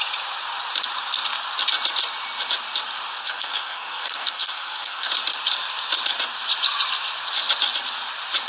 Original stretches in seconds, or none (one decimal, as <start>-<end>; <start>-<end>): 0.0-3.2; 5.1-8.5